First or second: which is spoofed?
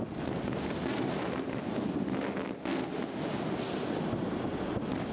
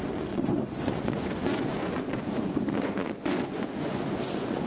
second